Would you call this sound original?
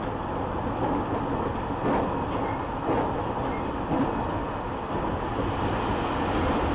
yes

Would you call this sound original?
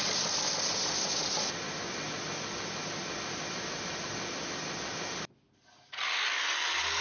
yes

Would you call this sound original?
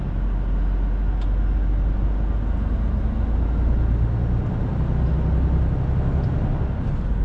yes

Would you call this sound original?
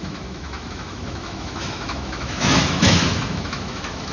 no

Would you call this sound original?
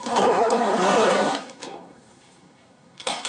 no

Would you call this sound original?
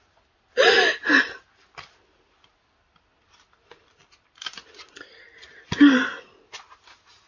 yes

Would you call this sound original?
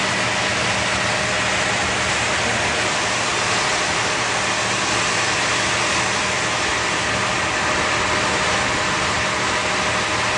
yes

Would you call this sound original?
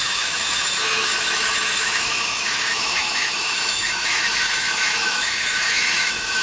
no